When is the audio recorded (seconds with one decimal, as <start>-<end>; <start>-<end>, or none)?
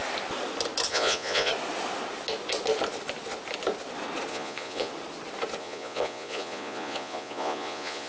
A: 0.0-0.9; 1.5-4.3; 4.9-5.6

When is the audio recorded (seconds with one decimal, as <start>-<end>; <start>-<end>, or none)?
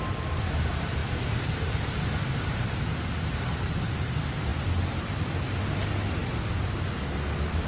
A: 0.0-7.7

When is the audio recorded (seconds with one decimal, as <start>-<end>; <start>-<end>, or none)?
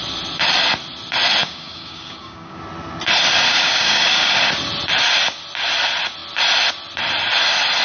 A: 0.0-1.4; 2.6-3.5; 4.3-7.8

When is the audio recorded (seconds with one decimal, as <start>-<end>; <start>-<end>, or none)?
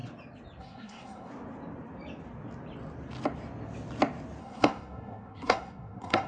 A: 0.0-0.6; 1.3-4.4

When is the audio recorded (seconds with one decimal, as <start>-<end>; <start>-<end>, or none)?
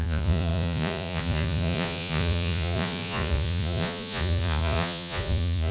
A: none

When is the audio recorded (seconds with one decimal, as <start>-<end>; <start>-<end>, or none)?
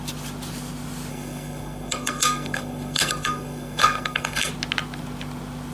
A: 0.0-1.1; 4.5-5.7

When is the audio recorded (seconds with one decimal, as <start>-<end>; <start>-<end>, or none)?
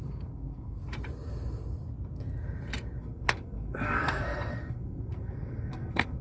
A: 0.8-3.0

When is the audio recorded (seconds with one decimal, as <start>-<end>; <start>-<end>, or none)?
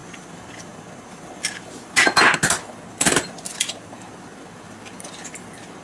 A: 0.0-5.8